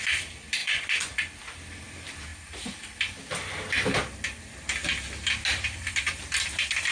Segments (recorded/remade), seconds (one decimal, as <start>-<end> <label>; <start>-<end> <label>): 0.0-0.6 recorded; 0.6-1.2 remade; 1.2-6.9 recorded